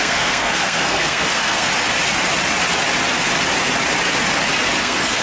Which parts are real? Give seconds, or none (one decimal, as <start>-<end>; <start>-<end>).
1.7-4.8